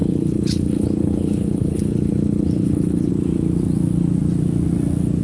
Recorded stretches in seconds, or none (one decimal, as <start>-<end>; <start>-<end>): 3.1-5.2